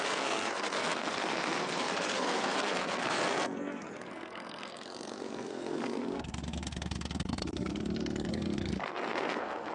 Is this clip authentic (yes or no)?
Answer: no